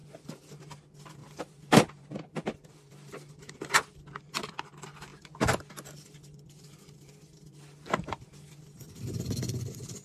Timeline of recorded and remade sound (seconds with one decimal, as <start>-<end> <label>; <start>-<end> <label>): 0.0-0.5 remade; 0.5-1.2 recorded; 1.2-4.2 remade; 4.2-10.0 recorded